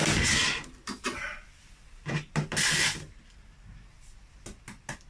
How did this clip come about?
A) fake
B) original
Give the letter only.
B